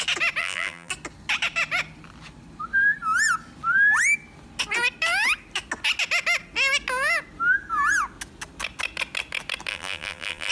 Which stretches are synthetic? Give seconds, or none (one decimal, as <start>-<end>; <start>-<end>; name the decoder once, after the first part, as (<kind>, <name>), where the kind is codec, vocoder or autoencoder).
0.4-0.9 (vocoder, BigVGAN v2); 9.7-10.5